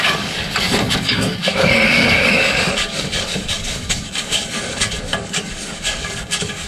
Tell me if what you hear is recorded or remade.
remade